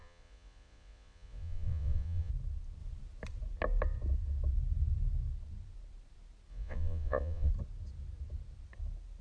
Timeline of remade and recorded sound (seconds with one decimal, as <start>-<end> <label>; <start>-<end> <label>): 0.0-2.3 remade; 2.3-6.5 recorded; 6.5-7.5 remade; 7.5-9.2 recorded